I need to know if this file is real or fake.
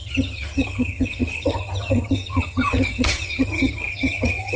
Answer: fake